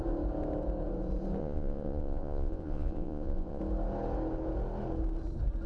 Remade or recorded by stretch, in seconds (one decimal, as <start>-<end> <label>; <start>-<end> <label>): 0.0-1.4 recorded; 1.4-3.6 remade; 3.6-5.7 recorded

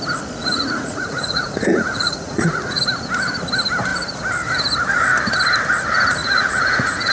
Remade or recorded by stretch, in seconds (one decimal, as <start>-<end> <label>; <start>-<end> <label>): 0.0-0.4 recorded; 0.4-2.8 remade; 2.8-6.2 recorded; 6.2-7.1 remade

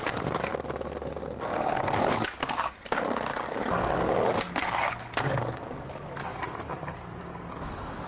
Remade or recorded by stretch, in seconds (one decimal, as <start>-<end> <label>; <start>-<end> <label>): 0.0-0.5 remade; 0.5-4.6 recorded; 4.6-8.1 remade

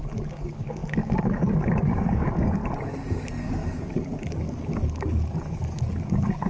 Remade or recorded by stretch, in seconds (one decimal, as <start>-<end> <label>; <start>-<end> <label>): 0.0-2.6 remade; 2.6-3.1 recorded; 3.1-6.5 remade